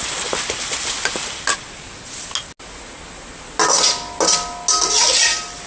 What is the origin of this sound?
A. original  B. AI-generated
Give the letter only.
A